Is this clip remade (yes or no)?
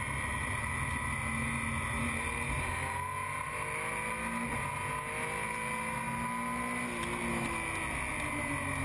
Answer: no